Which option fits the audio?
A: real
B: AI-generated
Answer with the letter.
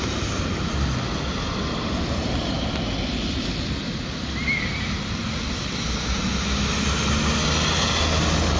A